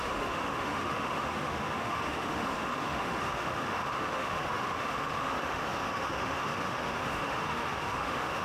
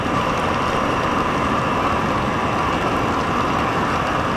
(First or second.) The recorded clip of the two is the second